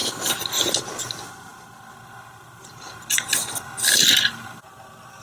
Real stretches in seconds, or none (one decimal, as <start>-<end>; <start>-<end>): 0.0-5.2